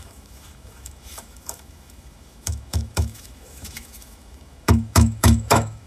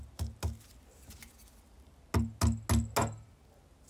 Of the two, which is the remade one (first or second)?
first